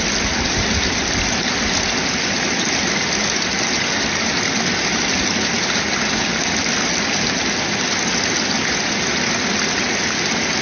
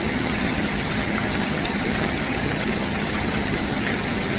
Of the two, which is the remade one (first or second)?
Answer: second